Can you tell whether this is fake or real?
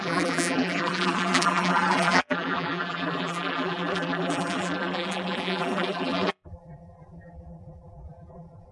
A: fake